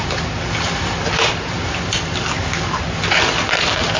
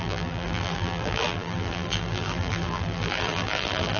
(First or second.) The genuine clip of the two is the first